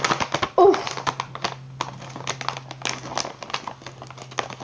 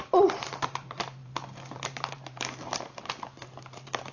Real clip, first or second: first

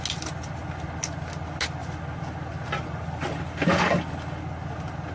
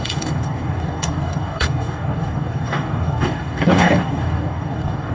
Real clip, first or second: first